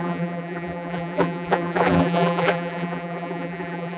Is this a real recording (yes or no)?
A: no